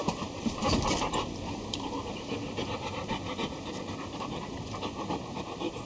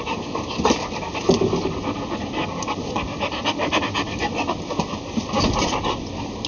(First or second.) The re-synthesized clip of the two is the first